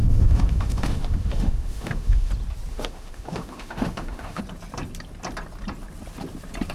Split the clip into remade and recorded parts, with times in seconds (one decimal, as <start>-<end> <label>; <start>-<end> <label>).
0.0-2.3 remade; 2.3-2.7 recorded; 2.7-4.4 remade; 4.4-6.7 recorded